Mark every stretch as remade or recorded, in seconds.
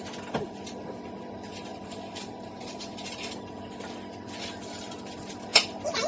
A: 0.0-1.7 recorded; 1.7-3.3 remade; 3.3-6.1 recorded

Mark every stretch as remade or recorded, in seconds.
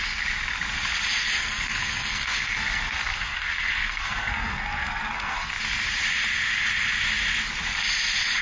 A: 0.0-1.2 recorded; 1.2-5.5 remade; 5.5-8.4 recorded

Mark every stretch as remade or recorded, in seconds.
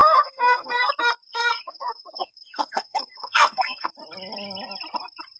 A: 0.0-0.9 remade; 0.9-1.3 recorded; 1.3-3.9 remade; 3.9-5.4 recorded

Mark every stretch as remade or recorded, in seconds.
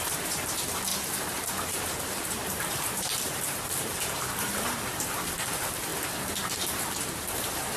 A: 0.0-5.9 remade; 5.9-6.6 recorded; 6.6-7.8 remade